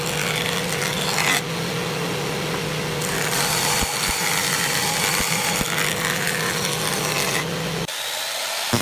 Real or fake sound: real